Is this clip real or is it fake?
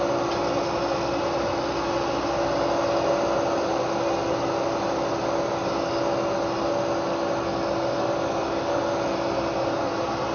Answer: real